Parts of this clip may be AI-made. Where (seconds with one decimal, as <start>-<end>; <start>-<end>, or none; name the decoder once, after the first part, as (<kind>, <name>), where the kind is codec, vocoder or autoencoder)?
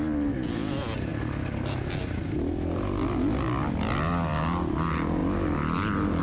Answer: none